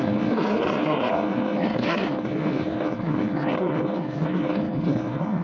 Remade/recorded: remade